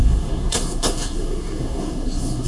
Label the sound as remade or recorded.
remade